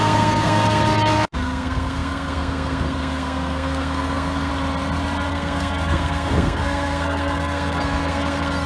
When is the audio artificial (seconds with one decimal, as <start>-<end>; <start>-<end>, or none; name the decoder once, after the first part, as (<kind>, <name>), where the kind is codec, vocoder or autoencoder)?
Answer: 0.0-4.5 (codec, SNAC); 5.3-8.7

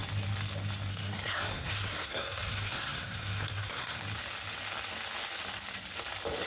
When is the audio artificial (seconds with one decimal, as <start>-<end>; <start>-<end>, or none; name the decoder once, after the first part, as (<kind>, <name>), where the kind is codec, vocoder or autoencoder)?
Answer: 0.9-4.0 (codec, SNAC)

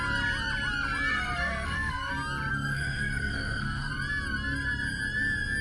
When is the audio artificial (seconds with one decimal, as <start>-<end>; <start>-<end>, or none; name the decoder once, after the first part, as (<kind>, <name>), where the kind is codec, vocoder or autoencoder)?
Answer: 1.1-2.1 (codec, SNAC); 2.5-3.9

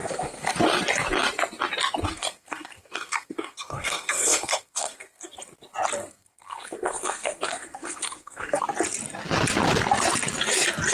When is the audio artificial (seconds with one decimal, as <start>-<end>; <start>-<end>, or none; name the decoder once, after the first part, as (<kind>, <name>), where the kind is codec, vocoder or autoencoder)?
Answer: 0.0-0.5 (codec, SNAC); 2.1-5.3; 6.0-8.6